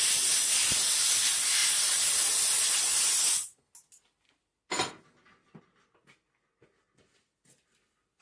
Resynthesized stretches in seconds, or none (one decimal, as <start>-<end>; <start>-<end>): none